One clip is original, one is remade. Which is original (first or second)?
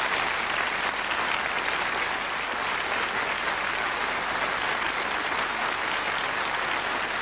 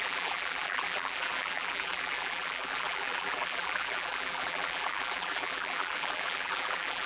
first